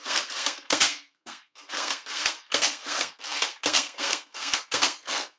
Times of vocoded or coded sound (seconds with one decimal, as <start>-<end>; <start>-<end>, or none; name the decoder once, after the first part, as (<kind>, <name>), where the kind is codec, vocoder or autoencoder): 0.0-5.4 (codec, SNAC)